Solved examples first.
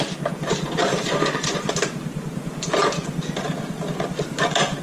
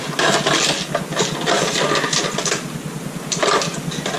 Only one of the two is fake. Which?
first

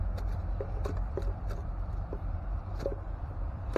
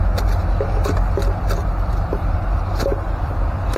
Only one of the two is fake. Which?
first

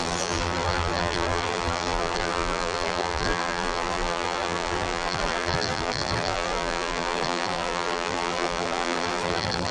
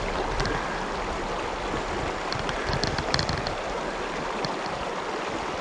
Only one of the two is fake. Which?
first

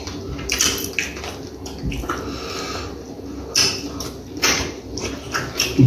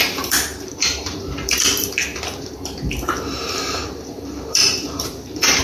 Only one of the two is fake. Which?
second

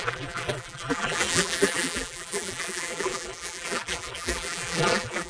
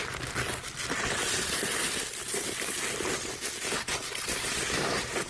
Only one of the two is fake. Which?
first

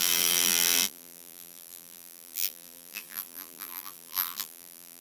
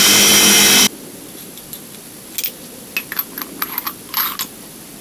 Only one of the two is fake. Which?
first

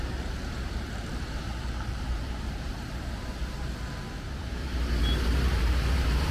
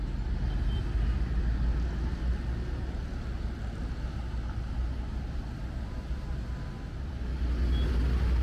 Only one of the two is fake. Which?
first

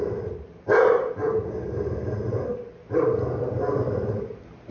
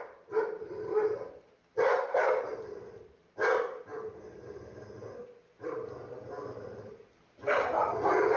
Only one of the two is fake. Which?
first